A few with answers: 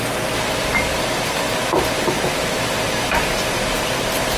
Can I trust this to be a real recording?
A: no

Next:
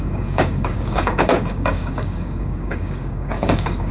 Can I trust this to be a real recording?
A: no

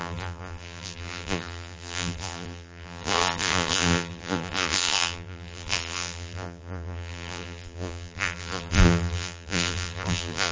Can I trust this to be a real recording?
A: no